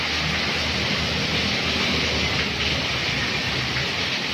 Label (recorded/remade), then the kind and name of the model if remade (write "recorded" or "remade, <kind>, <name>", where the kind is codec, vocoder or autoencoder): recorded